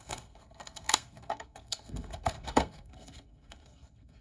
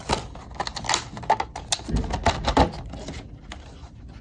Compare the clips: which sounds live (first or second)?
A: second